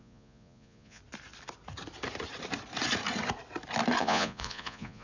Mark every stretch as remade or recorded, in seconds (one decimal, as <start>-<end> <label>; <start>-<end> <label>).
0.0-1.0 remade; 1.0-4.0 recorded; 4.0-5.0 remade

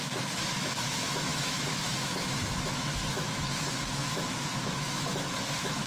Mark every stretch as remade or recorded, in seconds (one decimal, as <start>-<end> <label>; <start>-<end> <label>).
0.0-5.9 remade

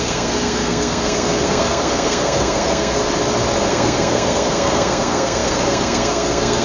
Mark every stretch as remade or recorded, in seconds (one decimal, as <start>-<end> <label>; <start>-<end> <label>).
0.0-3.0 remade; 3.0-3.7 recorded; 3.7-6.6 remade

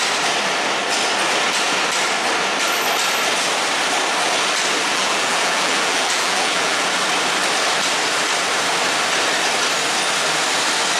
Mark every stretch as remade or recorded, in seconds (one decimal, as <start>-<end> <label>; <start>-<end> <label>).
0.0-4.9 recorded; 4.9-6.8 remade; 6.8-11.0 recorded

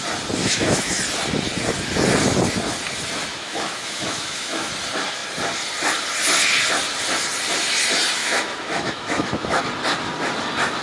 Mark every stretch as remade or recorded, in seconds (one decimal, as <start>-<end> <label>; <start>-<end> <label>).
0.0-0.4 recorded; 0.4-1.0 remade; 1.0-3.3 recorded; 3.3-4.7 remade; 4.7-8.2 recorded; 8.2-9.6 remade; 9.6-10.8 recorded

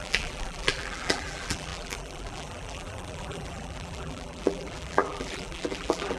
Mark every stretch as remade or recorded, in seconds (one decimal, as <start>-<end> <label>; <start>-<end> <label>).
0.0-6.2 remade

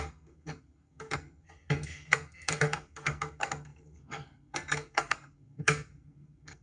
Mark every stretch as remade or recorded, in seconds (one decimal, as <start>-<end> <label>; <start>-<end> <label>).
0.0-6.6 remade